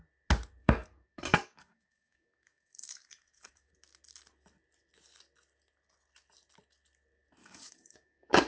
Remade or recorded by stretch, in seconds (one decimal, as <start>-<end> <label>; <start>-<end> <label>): 0.0-0.6 recorded; 0.6-3.7 remade; 3.7-7.4 recorded; 7.4-8.5 remade